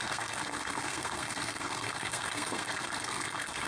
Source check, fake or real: fake